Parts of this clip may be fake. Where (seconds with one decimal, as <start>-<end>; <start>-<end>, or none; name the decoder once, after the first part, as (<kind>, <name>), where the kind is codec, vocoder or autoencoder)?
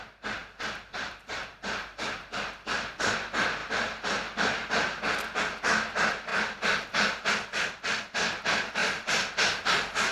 0.4-2.9 (vocoder, BigVGAN v2); 8.8-9.4